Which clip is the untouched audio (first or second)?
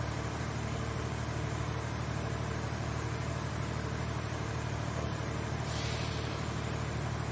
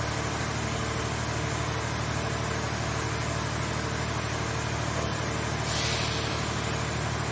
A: second